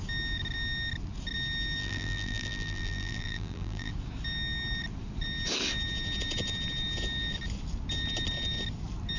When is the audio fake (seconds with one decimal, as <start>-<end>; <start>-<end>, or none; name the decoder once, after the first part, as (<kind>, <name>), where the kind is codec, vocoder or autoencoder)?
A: 1.8-3.9 (vocoder, BigVGAN v2)